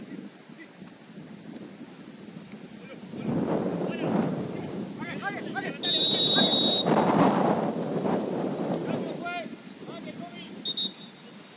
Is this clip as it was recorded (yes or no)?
yes